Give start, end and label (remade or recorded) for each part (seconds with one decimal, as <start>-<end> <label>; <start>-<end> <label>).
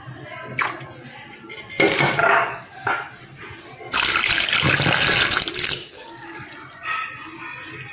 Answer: 0.0-2.2 recorded; 2.2-2.9 remade; 2.9-5.8 recorded; 5.8-6.4 remade; 6.4-7.9 recorded